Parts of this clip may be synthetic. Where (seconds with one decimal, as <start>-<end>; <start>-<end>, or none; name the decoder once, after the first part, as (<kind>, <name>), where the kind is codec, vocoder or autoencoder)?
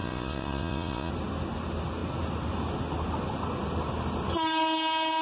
0.0-1.1 (vocoder, Vocos)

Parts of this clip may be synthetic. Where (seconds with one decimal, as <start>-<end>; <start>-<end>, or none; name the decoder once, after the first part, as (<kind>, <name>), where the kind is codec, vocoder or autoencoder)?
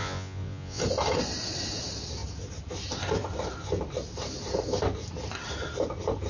0.0-0.8 (vocoder, Vocos)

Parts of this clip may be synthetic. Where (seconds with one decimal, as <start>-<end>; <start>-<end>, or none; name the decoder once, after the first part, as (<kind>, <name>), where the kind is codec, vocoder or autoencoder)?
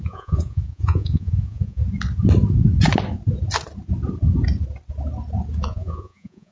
0.0-1.8 (vocoder, Vocos); 5.6-6.5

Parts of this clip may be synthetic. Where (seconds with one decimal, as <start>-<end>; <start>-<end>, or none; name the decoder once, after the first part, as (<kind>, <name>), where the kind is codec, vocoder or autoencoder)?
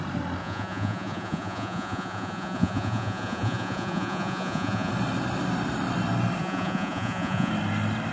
0.4-4.9 (vocoder, Vocos); 6.4-7.5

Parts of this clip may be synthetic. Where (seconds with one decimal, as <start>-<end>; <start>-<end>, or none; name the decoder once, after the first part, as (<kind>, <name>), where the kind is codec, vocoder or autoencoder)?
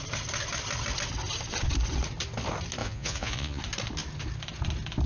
2.8-3.6 (vocoder, Vocos)